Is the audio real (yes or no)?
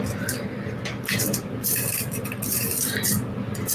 yes